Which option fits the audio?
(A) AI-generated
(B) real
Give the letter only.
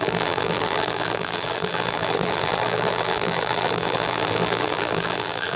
A